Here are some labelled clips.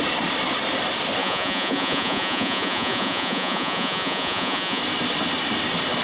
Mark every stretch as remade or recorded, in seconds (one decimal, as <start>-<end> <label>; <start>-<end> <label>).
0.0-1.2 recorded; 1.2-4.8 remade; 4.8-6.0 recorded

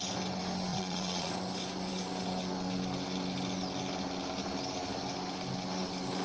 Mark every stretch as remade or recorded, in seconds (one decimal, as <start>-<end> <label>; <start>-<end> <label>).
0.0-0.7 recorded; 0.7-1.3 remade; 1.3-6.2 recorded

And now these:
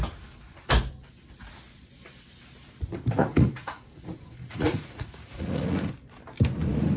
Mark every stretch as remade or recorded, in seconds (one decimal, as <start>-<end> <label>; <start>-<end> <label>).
0.0-3.2 recorded; 3.2-5.9 remade; 5.9-7.0 recorded